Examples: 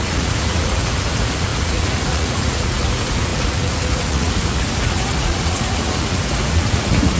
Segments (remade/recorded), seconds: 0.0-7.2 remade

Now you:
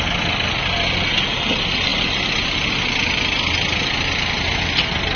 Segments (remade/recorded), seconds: 0.0-5.2 recorded

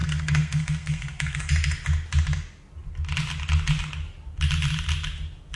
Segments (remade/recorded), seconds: 0.0-1.5 remade; 1.5-5.6 recorded

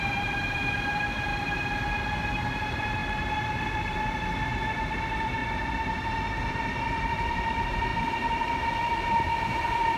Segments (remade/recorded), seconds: 0.0-1.3 remade; 1.3-2.6 recorded; 2.6-3.0 remade; 3.0-4.7 recorded; 4.7-5.4 remade; 5.4-6.5 recorded; 6.5-7.9 remade; 7.9-8.4 recorded; 8.4-10.0 remade

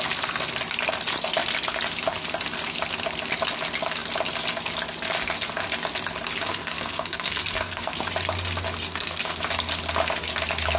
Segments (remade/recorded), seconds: 0.0-6.5 recorded; 6.5-8.0 remade; 8.0-8.9 recorded; 8.9-9.4 remade; 9.4-10.8 recorded

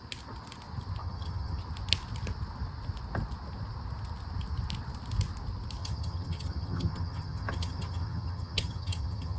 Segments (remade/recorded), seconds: 0.0-1.0 recorded; 1.0-1.6 remade; 1.6-5.8 recorded; 5.8-9.4 remade

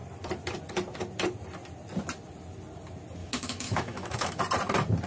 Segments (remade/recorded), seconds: 0.0-3.2 recorded; 3.2-4.4 remade; 4.4-5.1 recorded

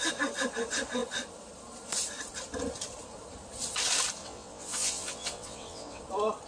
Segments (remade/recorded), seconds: 0.0-4.2 recorded; 4.2-6.0 remade; 6.0-6.5 recorded